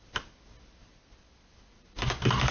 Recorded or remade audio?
recorded